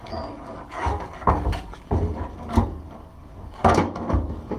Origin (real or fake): fake